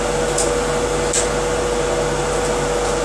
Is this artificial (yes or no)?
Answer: no